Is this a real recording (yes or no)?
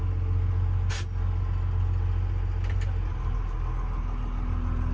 yes